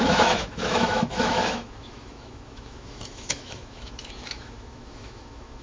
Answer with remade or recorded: remade